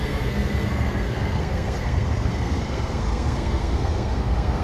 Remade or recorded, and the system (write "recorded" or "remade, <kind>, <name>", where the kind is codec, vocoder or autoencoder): remade, codec, SNAC